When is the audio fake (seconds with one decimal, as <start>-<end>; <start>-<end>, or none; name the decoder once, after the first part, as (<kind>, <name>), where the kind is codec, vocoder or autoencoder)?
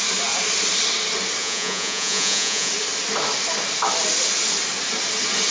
1.4-2.7 (vocoder, Vocos)